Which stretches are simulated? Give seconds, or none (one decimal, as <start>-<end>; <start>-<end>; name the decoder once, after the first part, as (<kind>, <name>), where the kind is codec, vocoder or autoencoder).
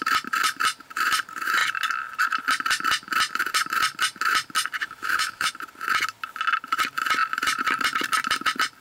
4.8-5.5 (autoencoder, DAC-VAE)